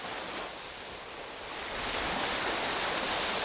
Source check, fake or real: real